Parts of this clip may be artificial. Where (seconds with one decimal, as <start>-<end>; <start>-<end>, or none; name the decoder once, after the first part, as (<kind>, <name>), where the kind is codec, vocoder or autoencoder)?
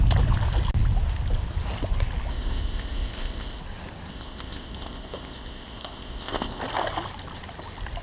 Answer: 2.3-3.6 (codec, ZipCodec); 4.1-6.6